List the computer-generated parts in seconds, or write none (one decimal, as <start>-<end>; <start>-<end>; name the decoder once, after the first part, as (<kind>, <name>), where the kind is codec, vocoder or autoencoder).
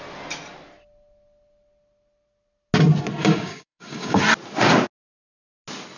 3.2-4.2 (codec, DAC)